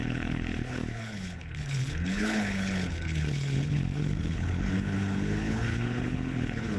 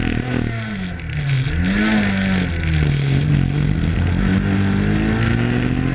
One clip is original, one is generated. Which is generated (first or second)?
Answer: first